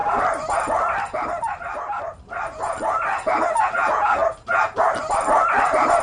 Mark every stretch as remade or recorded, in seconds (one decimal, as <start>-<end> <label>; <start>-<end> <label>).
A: 0.0-6.0 recorded